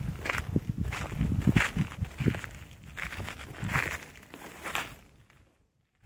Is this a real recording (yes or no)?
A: yes